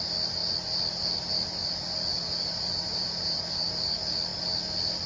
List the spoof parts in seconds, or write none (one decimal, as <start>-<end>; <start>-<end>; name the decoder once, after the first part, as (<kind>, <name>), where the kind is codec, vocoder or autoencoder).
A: 2.1-3.7 (vocoder, BigVGAN v2)